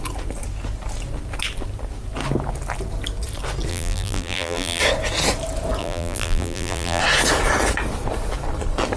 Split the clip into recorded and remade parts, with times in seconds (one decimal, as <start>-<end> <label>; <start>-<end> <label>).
0.0-3.7 recorded; 3.7-4.8 remade; 4.8-5.8 recorded; 5.8-7.0 remade; 7.0-9.0 recorded